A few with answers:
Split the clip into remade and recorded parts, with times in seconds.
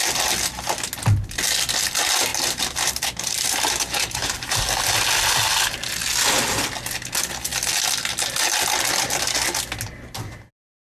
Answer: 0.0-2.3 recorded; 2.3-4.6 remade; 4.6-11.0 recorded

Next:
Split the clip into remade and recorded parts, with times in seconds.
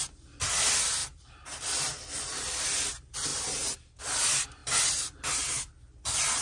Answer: 0.0-1.0 recorded; 1.0-1.9 remade; 1.9-3.3 recorded; 3.3-4.0 remade; 4.0-6.4 recorded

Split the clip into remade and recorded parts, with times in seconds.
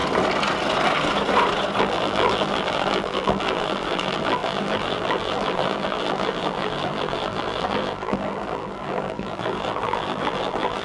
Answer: 0.0-1.8 recorded; 1.8-10.8 remade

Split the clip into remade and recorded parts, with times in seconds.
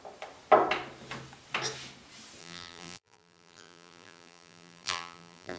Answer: 0.0-2.4 recorded; 2.4-5.6 remade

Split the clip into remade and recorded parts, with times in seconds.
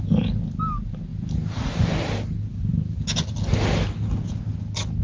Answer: 0.0-1.1 recorded; 1.1-2.0 remade; 2.0-5.0 recorded